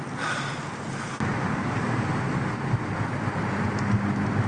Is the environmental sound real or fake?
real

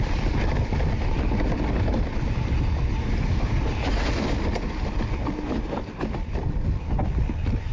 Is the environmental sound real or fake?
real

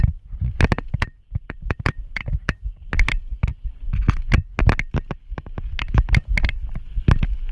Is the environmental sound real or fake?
real